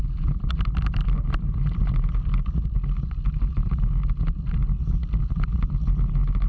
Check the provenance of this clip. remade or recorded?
recorded